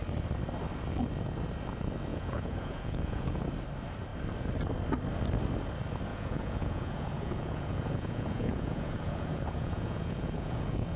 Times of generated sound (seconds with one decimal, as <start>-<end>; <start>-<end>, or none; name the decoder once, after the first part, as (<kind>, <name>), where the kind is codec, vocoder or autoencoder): 2.1-3.4 (vocoder, Vocos); 6.1-11.0